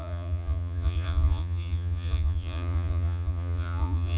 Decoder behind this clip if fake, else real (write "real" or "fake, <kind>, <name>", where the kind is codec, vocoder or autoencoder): fake, vocoder, Vocos